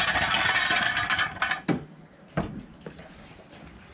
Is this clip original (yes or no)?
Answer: yes